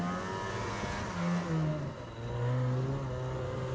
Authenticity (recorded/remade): recorded